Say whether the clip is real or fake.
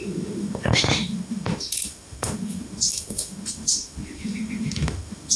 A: fake